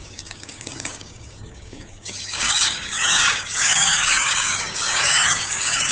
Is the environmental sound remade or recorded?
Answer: remade